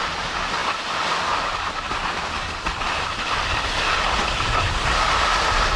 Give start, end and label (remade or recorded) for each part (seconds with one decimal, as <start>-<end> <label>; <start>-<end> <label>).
0.0-5.8 recorded

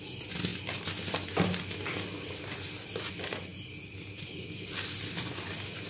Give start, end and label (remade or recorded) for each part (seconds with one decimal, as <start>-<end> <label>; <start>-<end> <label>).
0.0-5.9 recorded

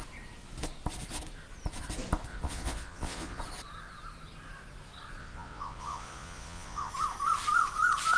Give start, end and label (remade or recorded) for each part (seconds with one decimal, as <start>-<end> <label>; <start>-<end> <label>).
0.0-2.3 recorded; 2.3-3.4 remade; 3.4-5.2 recorded; 5.2-6.9 remade; 6.9-8.2 recorded